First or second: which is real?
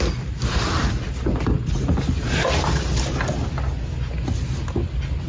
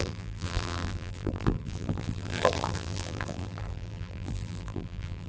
first